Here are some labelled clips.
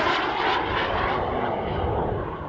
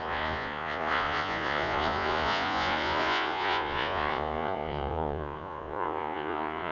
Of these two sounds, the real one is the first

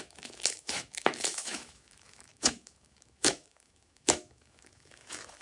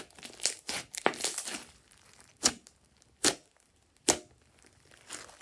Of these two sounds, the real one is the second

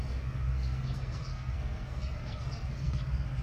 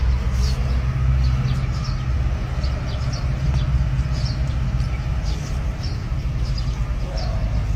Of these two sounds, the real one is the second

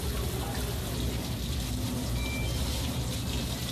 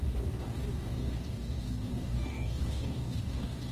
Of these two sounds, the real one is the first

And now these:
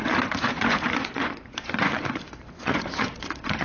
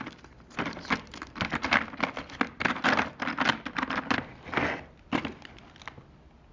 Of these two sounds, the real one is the second